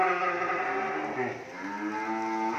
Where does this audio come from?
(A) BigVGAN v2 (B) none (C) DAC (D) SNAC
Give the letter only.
B